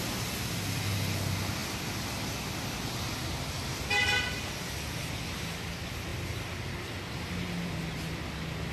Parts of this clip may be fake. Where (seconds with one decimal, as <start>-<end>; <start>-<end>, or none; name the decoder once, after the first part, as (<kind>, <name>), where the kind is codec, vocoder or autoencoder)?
6.1-7.0 (vocoder, BigVGAN v2)